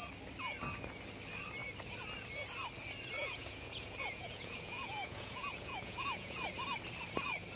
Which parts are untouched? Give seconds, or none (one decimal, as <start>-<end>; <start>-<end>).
0.0-3.2; 6.4-7.6